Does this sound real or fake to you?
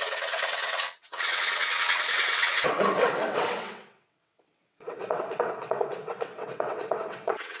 fake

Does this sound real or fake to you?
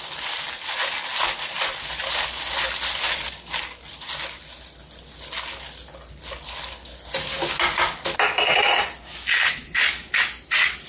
real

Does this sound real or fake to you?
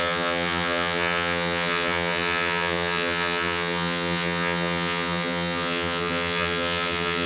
fake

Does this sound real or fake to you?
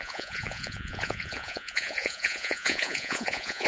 fake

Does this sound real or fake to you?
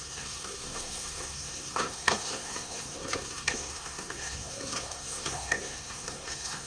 fake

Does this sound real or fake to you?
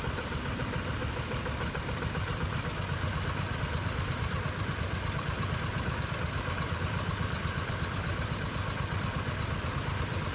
fake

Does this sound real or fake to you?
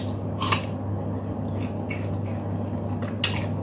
real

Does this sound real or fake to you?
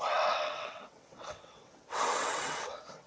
fake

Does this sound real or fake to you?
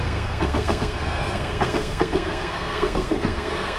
fake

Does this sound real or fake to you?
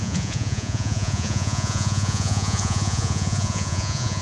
fake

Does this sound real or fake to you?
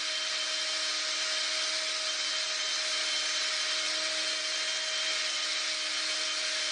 real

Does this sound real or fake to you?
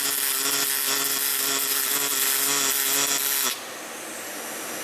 real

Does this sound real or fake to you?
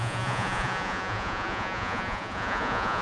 fake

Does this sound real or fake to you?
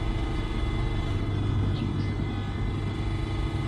real